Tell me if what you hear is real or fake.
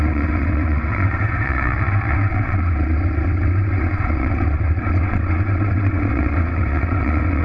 fake